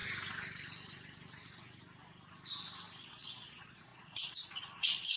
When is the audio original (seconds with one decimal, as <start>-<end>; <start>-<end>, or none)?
0.0-3.1